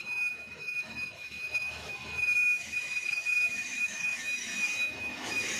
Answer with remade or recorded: remade